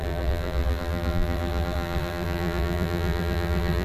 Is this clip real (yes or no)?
no